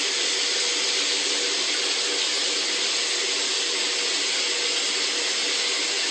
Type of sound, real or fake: real